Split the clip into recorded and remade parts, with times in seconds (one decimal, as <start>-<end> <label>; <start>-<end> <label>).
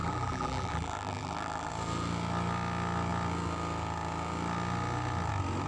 0.0-1.7 remade; 1.7-5.7 recorded